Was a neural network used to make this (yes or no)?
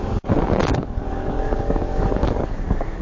yes